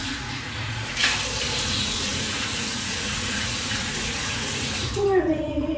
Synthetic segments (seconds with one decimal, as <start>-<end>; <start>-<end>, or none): 0.0-1.0; 1.6-5.8